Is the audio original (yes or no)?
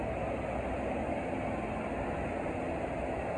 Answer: yes